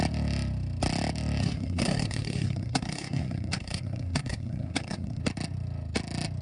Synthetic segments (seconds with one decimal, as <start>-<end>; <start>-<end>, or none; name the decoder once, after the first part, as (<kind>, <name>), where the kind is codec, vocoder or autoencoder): 1.4-5.2 (codec, SNAC)